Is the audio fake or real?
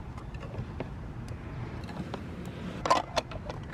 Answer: real